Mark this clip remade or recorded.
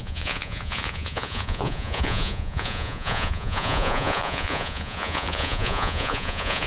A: remade